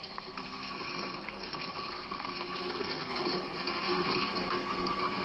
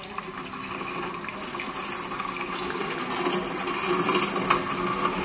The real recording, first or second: second